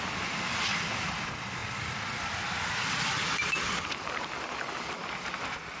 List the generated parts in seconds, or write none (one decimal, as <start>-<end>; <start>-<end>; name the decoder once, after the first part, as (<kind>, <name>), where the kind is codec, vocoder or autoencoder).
none